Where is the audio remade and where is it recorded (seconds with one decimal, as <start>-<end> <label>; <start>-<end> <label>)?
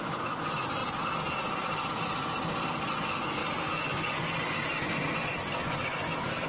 0.0-0.8 remade; 0.8-2.9 recorded; 2.9-6.5 remade